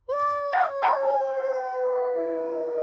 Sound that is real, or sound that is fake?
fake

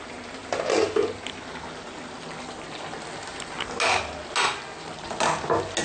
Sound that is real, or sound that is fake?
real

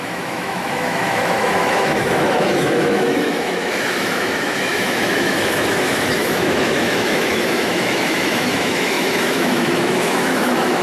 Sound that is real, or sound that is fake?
fake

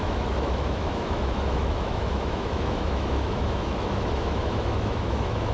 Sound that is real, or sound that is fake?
fake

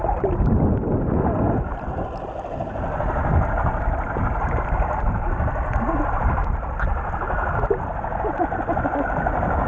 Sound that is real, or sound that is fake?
real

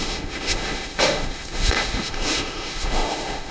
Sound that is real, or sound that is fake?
fake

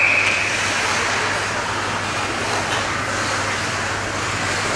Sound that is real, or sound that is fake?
real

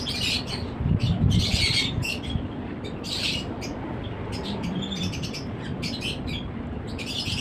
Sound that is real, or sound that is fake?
real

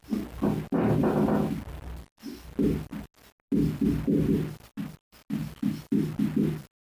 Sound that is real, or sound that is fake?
real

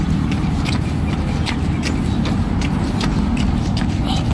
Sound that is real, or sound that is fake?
real